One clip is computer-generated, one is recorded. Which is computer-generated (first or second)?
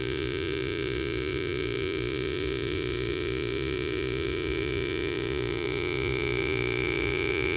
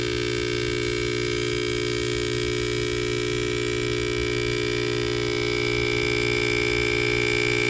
first